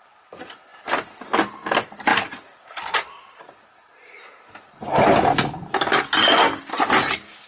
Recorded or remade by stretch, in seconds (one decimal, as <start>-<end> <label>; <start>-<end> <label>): 0.0-7.5 recorded